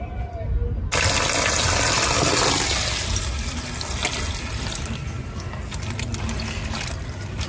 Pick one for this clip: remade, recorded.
recorded